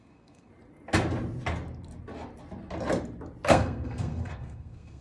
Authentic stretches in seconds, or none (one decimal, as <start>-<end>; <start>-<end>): 0.5-3.5